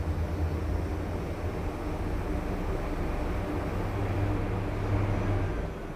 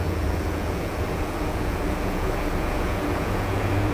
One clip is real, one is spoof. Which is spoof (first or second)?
second